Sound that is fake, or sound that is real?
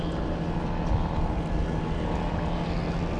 real